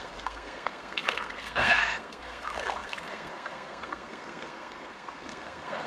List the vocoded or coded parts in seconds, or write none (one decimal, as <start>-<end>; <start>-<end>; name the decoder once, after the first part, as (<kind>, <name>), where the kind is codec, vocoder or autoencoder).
0.0-5.9 (codec, SNAC)